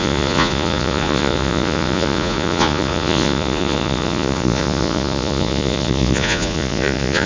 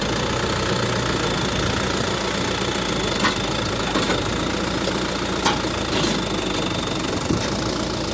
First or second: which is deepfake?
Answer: first